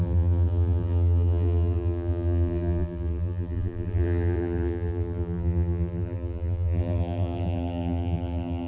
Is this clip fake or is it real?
fake